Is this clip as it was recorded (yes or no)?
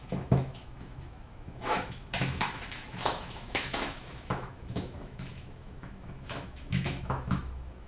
no